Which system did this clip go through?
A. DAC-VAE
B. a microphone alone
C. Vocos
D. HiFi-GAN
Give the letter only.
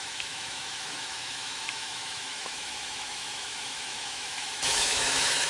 A